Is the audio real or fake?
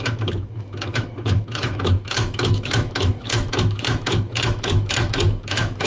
fake